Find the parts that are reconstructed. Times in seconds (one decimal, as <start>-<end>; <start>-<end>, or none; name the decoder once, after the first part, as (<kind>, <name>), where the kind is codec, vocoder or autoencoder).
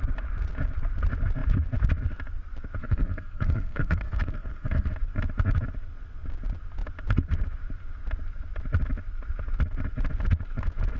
2.8-4.9 (codec, SNAC)